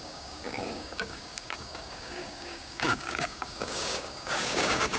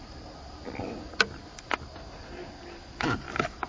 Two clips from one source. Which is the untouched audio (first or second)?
second